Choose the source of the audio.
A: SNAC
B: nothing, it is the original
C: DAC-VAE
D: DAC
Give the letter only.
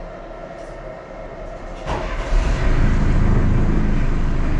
B